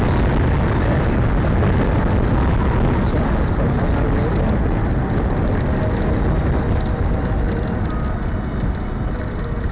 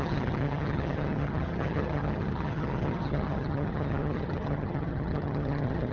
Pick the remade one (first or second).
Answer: second